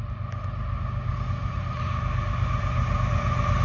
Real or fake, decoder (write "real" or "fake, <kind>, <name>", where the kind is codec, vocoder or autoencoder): real